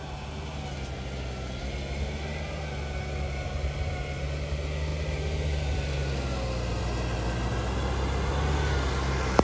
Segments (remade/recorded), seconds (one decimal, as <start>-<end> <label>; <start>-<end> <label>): 0.0-9.4 recorded